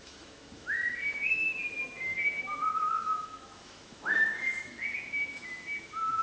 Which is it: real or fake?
fake